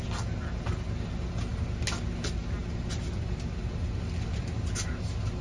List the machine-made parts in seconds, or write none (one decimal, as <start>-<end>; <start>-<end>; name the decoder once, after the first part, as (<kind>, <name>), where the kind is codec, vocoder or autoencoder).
none